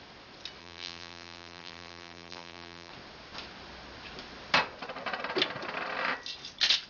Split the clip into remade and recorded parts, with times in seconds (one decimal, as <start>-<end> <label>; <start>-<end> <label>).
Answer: 0.0-0.6 recorded; 0.6-2.9 remade; 2.9-6.9 recorded